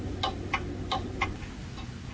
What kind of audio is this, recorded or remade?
recorded